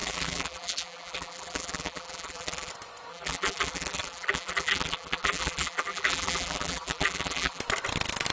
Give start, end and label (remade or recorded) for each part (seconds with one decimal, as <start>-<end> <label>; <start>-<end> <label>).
0.0-2.7 remade; 2.7-3.1 recorded; 3.1-7.6 remade; 7.6-8.3 recorded